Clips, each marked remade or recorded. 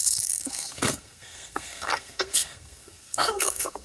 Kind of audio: remade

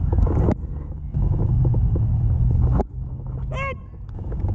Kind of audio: recorded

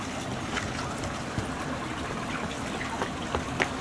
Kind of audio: recorded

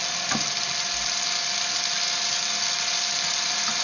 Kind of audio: recorded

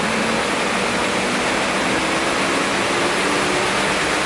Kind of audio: recorded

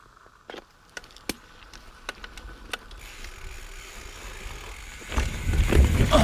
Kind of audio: recorded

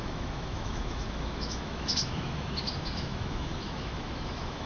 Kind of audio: remade